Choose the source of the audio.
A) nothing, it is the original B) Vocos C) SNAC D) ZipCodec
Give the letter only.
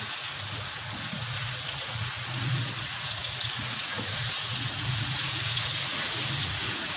B